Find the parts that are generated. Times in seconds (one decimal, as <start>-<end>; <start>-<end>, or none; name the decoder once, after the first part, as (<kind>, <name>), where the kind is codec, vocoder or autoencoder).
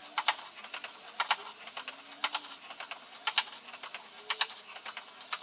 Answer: none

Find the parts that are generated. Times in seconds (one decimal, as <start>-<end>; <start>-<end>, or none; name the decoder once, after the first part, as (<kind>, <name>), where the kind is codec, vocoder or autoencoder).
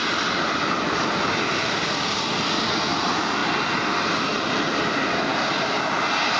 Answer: none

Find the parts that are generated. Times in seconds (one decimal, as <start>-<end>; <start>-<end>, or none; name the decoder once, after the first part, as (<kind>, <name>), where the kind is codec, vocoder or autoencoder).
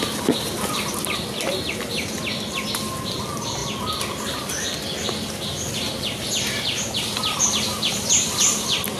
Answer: none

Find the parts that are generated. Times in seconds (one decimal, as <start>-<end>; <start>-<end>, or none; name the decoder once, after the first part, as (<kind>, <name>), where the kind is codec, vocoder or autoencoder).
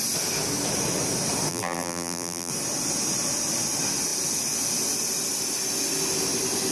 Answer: 1.5-2.5 (vocoder, BigVGAN v2)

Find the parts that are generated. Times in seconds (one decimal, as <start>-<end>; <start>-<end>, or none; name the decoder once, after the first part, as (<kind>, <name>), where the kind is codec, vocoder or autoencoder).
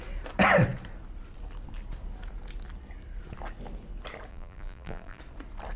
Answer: 4.3-5.2 (vocoder, BigVGAN v2)